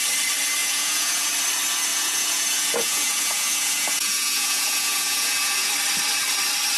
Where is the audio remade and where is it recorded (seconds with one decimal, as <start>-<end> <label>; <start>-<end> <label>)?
0.0-0.6 recorded; 0.6-1.3 remade; 1.3-1.9 recorded; 1.9-5.7 remade; 5.7-6.8 recorded